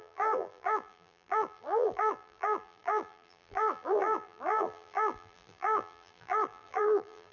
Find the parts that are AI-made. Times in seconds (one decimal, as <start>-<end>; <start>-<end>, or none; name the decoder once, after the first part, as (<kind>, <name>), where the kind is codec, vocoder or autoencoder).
0.0-7.3 (vocoder, BigVGAN v2)